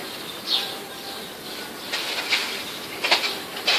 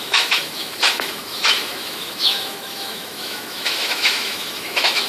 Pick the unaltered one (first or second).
first